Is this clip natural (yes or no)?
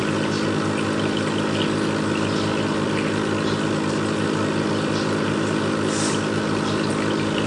yes